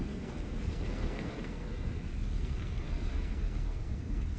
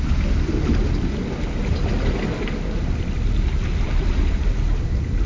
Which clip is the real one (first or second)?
second